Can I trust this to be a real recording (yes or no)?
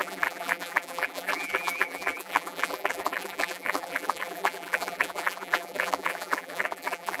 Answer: no